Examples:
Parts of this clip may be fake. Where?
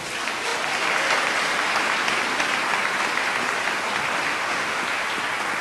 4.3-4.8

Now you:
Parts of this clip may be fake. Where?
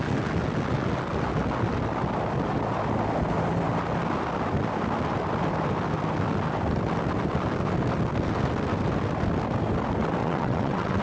10.2-11.0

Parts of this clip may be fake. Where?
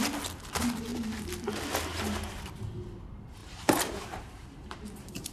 3.4-5.3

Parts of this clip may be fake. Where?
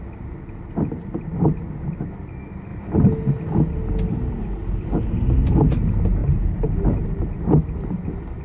6.2-6.7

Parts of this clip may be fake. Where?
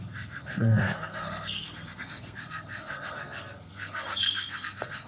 0.0-5.1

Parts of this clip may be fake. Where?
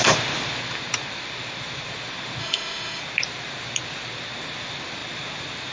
2.4-3.0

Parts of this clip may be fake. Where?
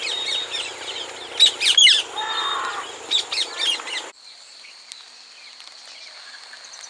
none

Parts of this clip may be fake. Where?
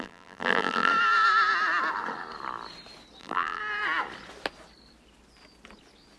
0.0-0.9; 3.2-3.6